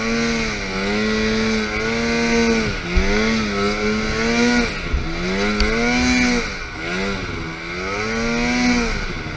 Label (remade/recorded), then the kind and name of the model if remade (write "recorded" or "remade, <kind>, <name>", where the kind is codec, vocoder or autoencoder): recorded